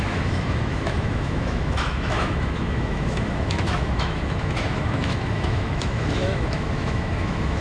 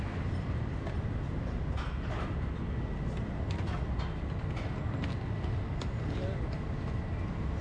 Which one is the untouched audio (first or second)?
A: second